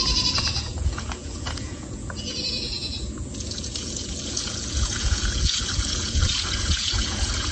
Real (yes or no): no